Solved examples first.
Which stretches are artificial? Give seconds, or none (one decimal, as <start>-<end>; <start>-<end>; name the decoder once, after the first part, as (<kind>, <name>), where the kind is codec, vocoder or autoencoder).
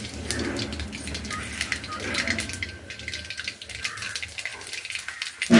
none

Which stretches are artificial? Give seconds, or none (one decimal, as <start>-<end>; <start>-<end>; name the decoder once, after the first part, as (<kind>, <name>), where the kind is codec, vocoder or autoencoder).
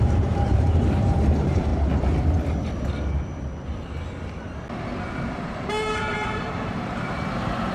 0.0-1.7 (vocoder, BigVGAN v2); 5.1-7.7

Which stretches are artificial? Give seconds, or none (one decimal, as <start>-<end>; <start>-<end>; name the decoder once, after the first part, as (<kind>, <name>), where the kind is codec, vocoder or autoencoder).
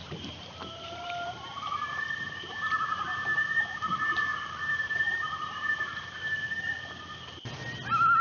0.0-3.4 (vocoder, BigVGAN v2); 4.3-6.6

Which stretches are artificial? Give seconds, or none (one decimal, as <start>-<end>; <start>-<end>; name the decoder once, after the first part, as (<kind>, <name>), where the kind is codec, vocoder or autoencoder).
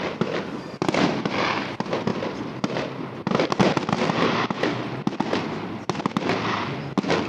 none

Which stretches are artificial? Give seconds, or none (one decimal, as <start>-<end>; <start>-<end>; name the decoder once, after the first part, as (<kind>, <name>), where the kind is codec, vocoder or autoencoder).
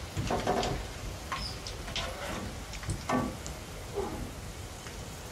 none